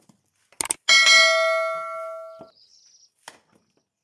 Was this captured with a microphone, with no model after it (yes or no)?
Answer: yes